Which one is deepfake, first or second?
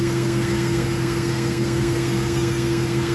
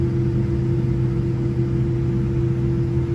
first